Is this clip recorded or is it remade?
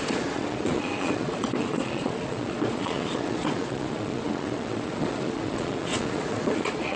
remade